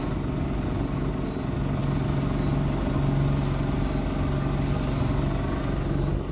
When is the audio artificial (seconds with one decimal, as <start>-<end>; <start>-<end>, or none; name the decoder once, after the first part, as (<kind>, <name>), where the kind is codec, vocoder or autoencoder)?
none